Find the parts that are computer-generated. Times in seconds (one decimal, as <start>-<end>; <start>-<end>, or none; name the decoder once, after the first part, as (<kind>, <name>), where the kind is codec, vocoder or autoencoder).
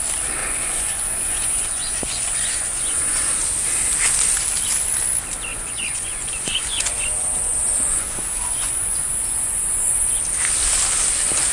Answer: 0.4-3.4 (vocoder, Vocos); 5.5-10.2